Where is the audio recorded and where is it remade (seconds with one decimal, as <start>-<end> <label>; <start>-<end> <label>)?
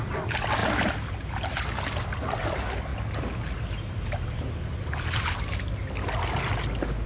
0.0-7.1 recorded